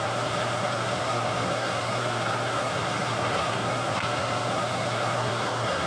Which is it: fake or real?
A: fake